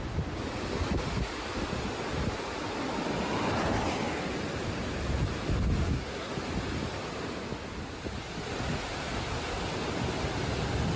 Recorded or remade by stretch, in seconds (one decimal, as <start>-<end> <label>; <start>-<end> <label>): 0.0-5.8 recorded; 5.8-6.3 remade; 6.3-11.0 recorded